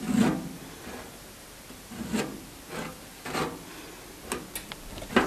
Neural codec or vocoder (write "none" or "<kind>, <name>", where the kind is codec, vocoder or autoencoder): none